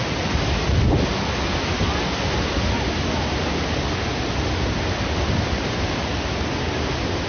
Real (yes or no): yes